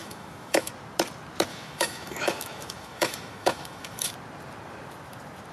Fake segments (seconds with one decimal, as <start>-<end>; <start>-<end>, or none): 0.0-0.7; 1.5-4.1